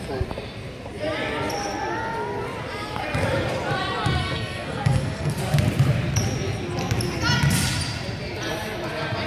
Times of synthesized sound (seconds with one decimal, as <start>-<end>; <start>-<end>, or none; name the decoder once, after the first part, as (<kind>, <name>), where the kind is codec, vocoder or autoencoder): 4.2-5.3 (codec, SNAC)